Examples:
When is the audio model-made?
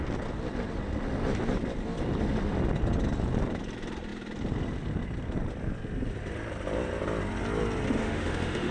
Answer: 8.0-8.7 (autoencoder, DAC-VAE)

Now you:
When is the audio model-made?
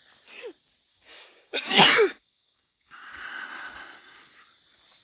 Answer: 0.9-3.1 (codec, DAC)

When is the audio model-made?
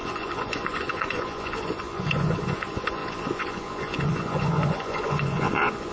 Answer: 0.0-5.9 (vocoder, Vocos)